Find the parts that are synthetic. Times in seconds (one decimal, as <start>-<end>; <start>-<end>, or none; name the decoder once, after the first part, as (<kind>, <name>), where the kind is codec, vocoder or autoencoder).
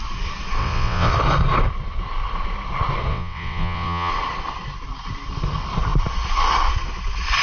0.6-1.1 (vocoder, WaveNeXt); 3.1-4.1